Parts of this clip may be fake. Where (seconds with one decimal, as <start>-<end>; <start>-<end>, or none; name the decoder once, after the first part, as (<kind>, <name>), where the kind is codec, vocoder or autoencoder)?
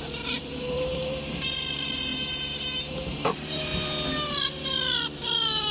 0.0-2.1 (vocoder, BigVGAN v2); 2.9-3.7; 4.3-5.7